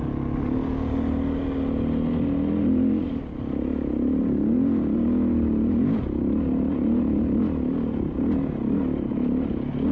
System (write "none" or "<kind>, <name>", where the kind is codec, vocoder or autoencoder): none